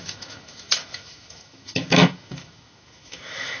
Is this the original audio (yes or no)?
no